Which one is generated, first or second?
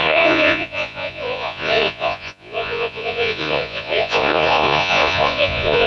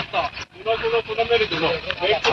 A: first